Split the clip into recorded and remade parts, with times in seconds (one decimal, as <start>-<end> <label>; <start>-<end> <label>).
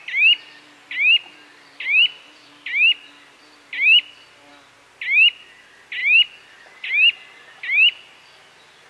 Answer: 0.0-8.9 recorded